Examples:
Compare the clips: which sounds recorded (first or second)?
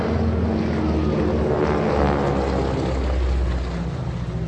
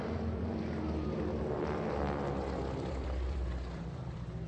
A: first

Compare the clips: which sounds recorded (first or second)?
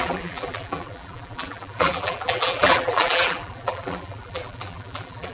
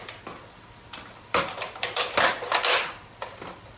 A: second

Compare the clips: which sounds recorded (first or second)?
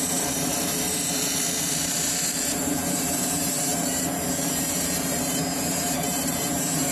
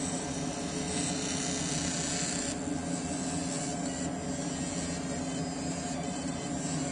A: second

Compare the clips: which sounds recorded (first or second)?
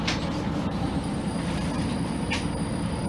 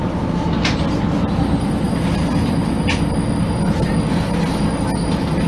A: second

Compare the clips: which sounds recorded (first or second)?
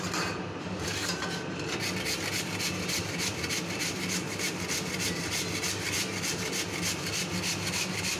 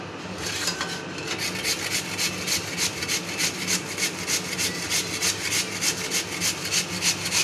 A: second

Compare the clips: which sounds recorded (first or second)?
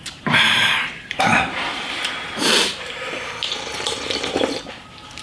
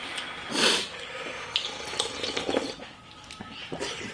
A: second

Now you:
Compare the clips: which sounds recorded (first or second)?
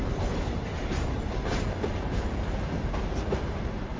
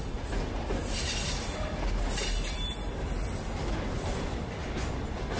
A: second